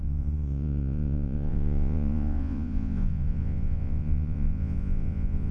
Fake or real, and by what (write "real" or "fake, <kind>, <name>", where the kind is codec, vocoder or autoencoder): fake, vocoder, Vocos